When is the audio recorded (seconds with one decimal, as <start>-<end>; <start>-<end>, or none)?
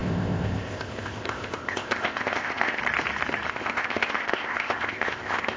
2.8-3.5